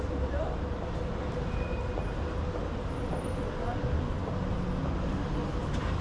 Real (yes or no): yes